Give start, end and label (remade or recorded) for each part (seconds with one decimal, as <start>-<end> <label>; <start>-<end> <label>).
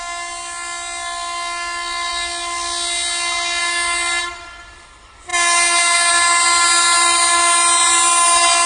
0.0-8.7 recorded